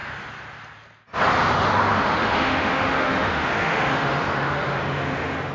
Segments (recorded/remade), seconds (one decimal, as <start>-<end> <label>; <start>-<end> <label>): 0.0-1.9 recorded; 1.9-5.5 remade